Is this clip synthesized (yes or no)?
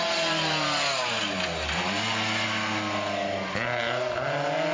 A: no